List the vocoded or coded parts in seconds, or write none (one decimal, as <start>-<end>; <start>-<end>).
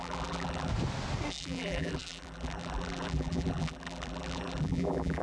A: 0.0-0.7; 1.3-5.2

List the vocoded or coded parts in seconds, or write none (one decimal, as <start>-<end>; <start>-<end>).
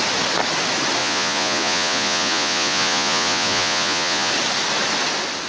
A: 1.0-4.3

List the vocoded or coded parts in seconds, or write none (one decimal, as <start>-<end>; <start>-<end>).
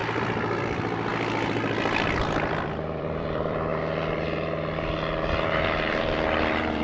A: 0.6-1.1; 2.1-3.7; 6.0-6.8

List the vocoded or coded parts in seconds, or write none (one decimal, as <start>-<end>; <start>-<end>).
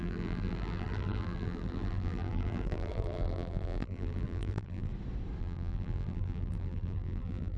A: 0.0-4.9; 5.4-7.6